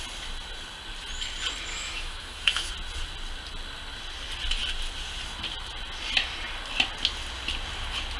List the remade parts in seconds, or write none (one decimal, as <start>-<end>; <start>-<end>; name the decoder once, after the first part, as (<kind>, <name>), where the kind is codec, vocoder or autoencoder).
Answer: 1.7-2.7 (autoencoder, DAC-VAE)